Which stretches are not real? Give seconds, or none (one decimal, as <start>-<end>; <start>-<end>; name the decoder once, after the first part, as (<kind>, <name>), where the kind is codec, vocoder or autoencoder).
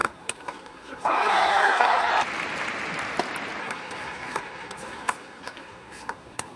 0.0-2.1 (codec, SNAC); 3.6-6.6